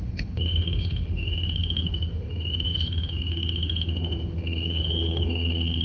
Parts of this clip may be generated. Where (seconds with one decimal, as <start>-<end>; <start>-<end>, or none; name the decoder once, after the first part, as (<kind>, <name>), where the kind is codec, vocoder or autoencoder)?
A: 0.0-5.8 (autoencoder, DAC-VAE)